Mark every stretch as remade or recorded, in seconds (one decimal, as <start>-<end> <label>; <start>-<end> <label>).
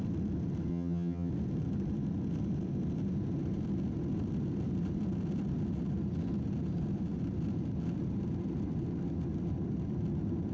0.0-0.7 recorded; 0.7-1.3 remade; 1.3-10.5 recorded